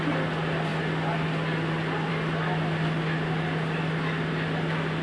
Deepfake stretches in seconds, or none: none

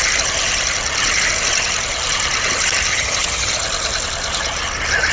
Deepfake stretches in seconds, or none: 2.9-3.5 (vocoder, HiFi-GAN)

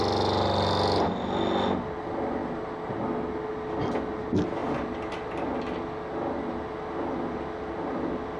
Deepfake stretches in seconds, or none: none

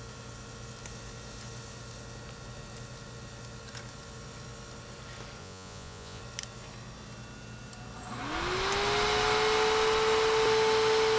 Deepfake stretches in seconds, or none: 5.4-6.2 (vocoder, Vocos)

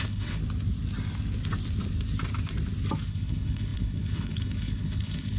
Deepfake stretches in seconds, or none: 0.0-0.4 (codec, HILCodec); 3.1-5.4

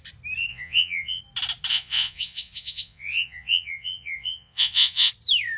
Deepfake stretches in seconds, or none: 0.5-1.2 (vocoder, Vocos); 1.7-5.1

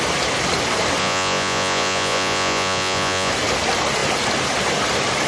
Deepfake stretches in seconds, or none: 1.0-3.3 (vocoder, Vocos)